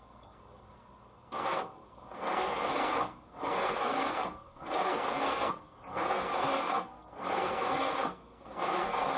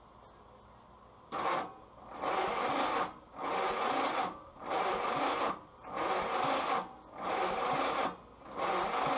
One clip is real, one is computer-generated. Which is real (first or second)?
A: second